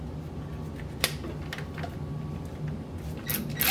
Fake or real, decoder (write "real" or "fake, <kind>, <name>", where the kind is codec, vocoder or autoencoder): real